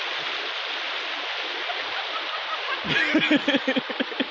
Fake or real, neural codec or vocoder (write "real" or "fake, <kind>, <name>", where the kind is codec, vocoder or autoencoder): real